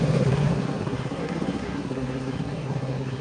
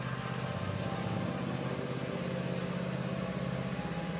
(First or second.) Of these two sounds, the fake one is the first